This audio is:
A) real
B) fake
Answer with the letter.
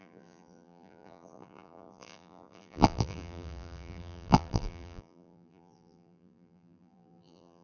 B